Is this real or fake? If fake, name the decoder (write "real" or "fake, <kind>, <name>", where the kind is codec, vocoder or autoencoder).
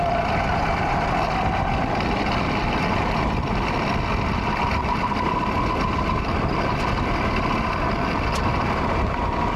real